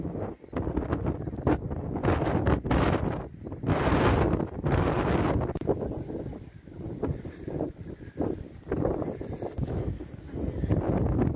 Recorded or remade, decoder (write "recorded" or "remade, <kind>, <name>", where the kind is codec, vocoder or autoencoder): recorded